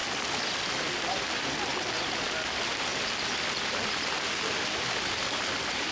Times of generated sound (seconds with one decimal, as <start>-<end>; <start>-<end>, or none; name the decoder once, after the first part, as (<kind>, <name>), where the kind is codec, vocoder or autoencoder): 0.0-1.3 (vocoder, BigVGAN v2)